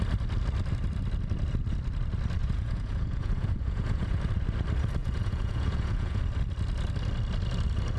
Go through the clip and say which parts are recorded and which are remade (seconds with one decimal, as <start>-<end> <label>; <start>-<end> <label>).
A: 0.0-2.4 recorded; 2.4-4.2 remade; 4.2-5.0 recorded; 5.0-6.2 remade; 6.2-8.0 recorded